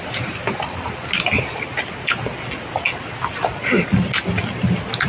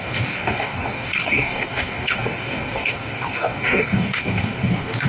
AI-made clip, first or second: second